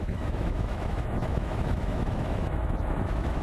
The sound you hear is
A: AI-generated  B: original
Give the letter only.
A